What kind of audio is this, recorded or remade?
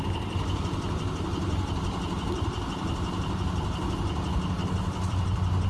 recorded